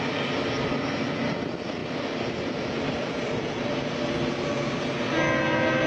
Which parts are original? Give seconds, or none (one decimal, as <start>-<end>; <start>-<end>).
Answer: 0.0-5.9